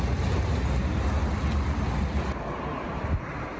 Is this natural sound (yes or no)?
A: yes